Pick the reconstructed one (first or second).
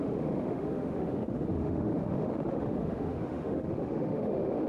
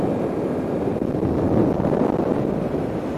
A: first